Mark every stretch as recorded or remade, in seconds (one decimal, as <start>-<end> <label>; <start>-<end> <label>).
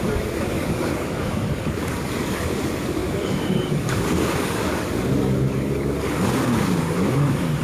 0.0-7.6 remade